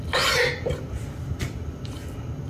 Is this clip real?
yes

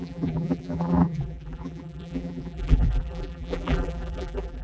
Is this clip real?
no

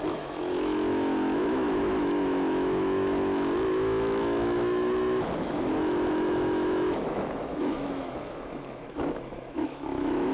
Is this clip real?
no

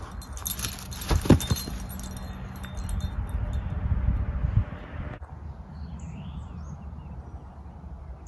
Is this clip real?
yes